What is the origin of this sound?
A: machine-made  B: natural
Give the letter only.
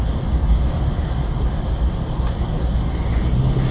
B